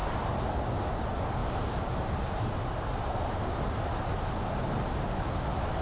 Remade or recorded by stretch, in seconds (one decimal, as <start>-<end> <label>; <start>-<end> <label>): 0.0-0.7 remade; 0.7-1.4 recorded; 1.4-2.8 remade; 2.8-5.8 recorded